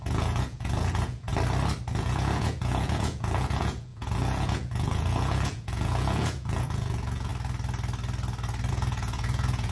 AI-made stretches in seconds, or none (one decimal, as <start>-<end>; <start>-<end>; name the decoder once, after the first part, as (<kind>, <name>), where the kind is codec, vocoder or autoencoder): 0.0-1.3 (vocoder, Vocos); 1.9-7.3; 8.7-9.7